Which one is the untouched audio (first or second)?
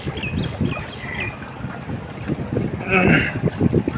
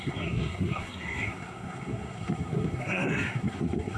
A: first